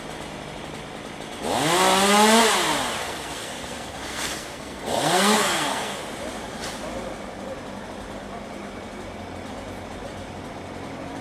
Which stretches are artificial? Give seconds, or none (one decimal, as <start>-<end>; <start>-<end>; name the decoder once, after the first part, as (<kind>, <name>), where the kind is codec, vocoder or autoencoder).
3.0-6.0 (codec, SNAC)